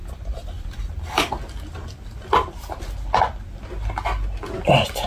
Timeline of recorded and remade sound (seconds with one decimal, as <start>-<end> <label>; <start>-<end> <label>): 0.0-1.3 remade; 1.3-5.1 recorded

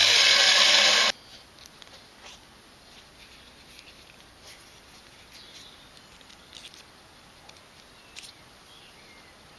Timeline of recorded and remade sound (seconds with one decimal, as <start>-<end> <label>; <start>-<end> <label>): 0.0-9.6 recorded

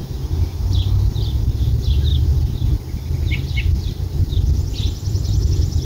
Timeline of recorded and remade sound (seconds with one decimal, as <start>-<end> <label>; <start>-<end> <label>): 0.0-2.1 recorded; 2.1-2.8 remade; 2.8-4.6 recorded; 4.6-5.3 remade; 5.3-5.8 recorded

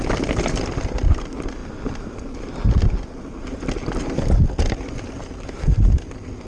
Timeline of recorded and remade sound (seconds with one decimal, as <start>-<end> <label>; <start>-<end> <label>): 0.0-6.5 recorded